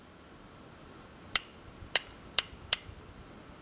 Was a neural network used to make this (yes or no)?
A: yes